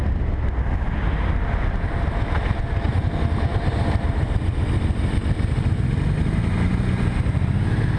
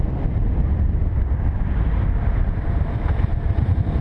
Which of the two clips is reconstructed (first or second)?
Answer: second